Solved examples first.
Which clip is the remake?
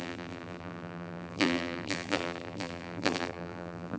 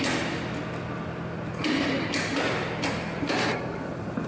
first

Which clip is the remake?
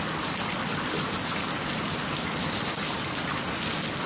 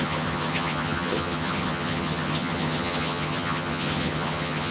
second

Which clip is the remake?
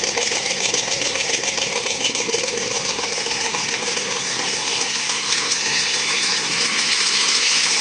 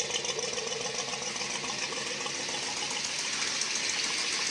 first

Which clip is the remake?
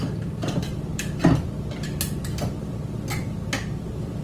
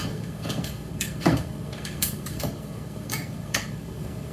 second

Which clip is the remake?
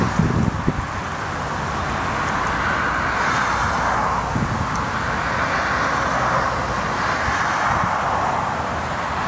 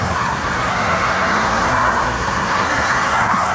second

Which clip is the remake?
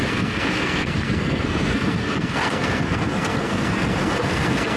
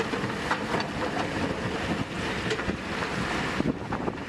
first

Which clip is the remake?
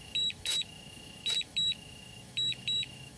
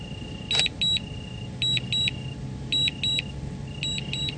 first